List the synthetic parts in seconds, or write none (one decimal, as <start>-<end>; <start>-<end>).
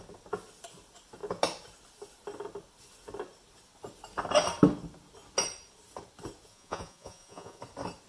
6.5-7.6